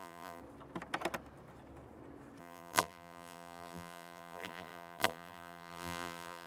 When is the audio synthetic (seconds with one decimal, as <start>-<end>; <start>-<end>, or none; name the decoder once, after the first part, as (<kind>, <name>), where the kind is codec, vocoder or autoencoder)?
0.0-0.4 (vocoder, BigVGAN v2); 2.4-6.5

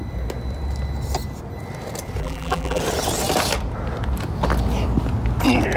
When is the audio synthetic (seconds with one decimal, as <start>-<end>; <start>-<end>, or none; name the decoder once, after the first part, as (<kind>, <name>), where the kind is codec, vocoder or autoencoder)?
2.2-2.8 (vocoder, BigVGAN v2)

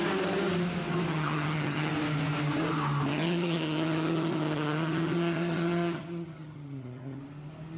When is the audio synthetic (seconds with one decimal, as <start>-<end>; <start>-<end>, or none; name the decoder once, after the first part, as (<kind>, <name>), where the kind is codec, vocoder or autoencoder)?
1.1-1.9 (vocoder, HiFi-GAN); 3.1-7.2

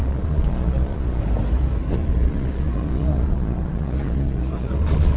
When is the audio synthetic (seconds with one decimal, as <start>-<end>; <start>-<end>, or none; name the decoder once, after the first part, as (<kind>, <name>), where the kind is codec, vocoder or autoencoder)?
0.0-1.2 (vocoder, Vocos); 1.9-5.2

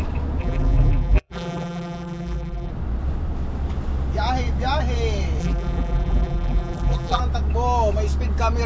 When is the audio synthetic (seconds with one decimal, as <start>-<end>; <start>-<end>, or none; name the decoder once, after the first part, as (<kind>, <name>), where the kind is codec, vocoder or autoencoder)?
0.4-2.7 (vocoder, BigVGAN v2); 5.4-7.2